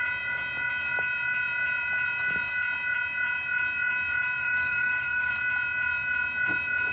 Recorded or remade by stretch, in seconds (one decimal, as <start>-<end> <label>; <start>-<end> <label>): 0.0-4.4 recorded; 4.4-5.3 remade; 5.3-6.9 recorded